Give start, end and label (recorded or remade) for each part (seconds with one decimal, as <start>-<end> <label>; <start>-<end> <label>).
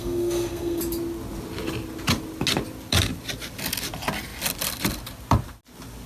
0.0-0.8 remade; 0.8-6.1 recorded